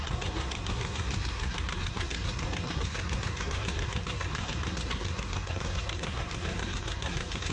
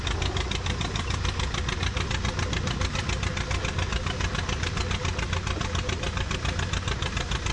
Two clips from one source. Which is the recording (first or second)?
second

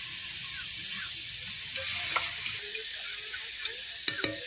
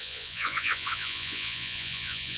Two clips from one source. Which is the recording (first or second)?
first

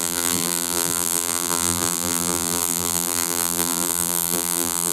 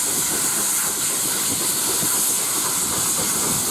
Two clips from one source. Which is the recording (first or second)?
second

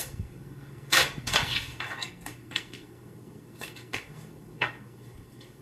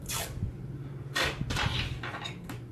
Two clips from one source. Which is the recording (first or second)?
second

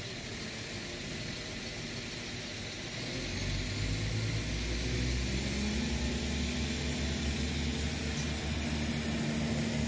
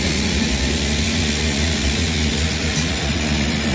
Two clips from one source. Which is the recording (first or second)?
first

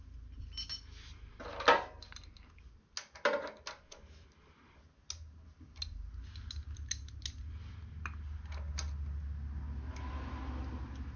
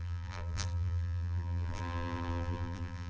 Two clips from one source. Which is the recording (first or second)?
first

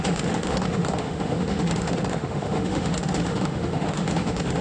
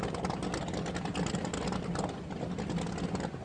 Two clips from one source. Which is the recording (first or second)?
second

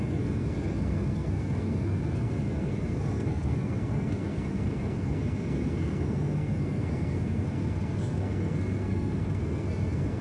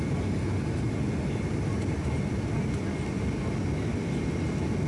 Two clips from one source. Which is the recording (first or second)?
second